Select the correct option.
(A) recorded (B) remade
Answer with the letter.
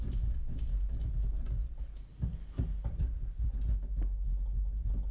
A